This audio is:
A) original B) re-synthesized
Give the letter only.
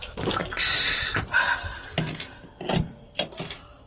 A